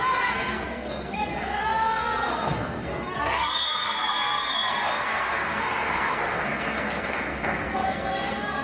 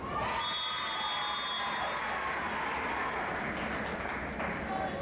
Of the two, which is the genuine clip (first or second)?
second